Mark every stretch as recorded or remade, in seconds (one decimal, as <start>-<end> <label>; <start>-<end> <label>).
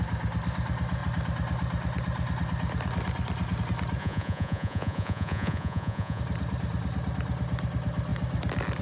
0.0-4.0 recorded; 4.0-6.2 remade; 6.2-8.8 recorded